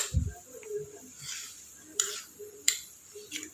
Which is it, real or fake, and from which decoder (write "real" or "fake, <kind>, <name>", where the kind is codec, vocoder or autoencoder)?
fake, vocoder, BigVGAN v2